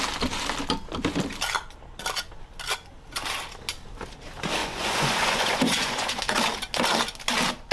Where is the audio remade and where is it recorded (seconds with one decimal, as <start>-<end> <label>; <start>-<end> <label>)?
0.0-4.6 recorded; 4.6-6.2 remade; 6.2-7.7 recorded